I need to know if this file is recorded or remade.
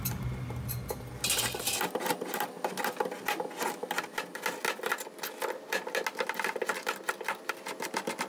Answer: recorded